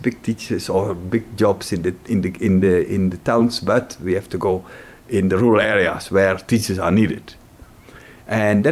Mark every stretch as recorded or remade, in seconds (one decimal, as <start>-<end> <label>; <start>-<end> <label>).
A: 0.0-8.7 remade